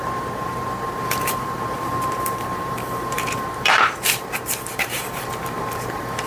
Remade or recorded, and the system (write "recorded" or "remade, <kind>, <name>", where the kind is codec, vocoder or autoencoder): remade, vocoder, BigVGAN v2